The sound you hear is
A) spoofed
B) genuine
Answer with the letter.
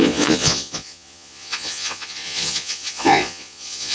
A